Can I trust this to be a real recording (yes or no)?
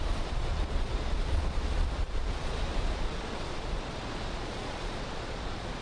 no